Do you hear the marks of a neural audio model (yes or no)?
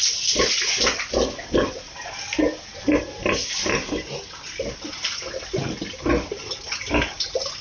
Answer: no